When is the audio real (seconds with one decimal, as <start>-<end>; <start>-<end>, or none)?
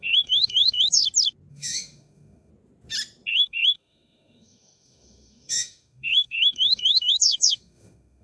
1.0-1.5; 2.5-3.3